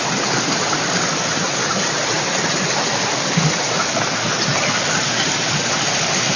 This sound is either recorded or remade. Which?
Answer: recorded